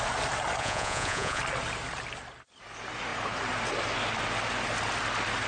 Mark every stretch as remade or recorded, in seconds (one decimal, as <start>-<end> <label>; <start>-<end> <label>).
0.0-0.6 recorded; 0.6-1.4 remade; 1.4-5.5 recorded